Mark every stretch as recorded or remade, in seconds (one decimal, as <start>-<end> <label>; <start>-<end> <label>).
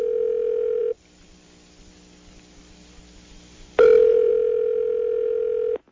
0.0-0.8 recorded; 0.8-4.3 remade; 4.3-5.9 recorded